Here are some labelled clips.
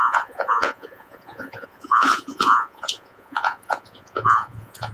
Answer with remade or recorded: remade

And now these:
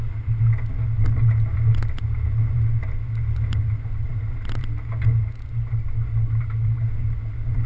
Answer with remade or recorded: recorded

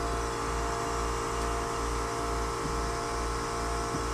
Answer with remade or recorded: recorded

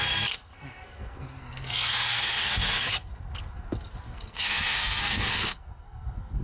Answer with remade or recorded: remade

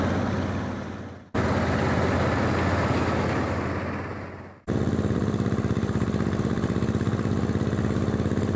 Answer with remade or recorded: recorded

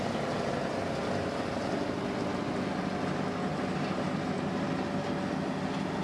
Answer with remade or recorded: recorded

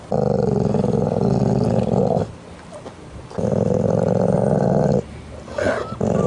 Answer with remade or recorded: recorded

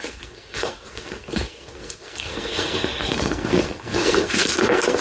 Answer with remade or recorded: remade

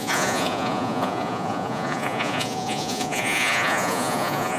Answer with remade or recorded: remade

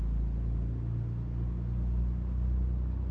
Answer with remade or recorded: recorded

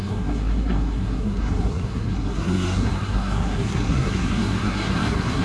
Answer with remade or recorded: remade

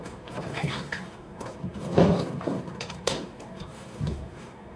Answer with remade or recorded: remade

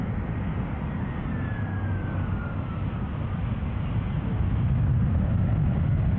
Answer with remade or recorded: recorded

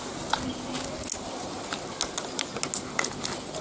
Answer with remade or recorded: recorded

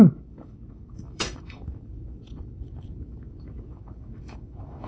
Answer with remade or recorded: remade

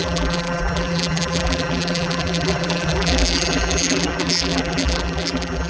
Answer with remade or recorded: remade